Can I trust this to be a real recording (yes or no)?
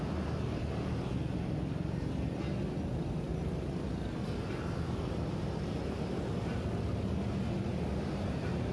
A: yes